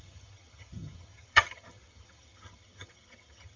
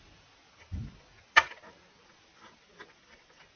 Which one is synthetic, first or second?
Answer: first